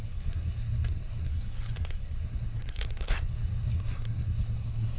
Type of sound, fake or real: fake